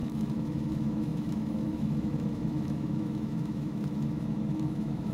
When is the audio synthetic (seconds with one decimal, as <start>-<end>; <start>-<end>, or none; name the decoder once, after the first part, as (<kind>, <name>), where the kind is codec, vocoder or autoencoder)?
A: 0.0-5.1 (autoencoder, DAC-VAE)